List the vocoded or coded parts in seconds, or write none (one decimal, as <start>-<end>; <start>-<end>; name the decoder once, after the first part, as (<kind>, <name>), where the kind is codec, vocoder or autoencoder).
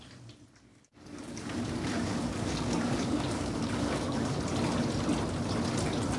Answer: 0.7-4.4 (codec, DAC)